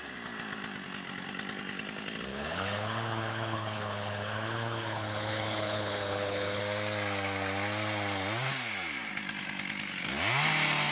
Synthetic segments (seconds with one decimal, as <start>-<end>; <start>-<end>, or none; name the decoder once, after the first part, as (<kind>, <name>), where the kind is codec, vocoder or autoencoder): 2.3-6.6 (codec, HILCodec)